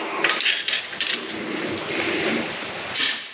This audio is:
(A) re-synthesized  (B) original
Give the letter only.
B